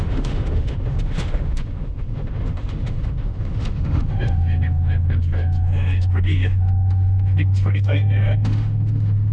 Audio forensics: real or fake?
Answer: fake